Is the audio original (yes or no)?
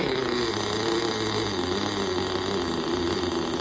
yes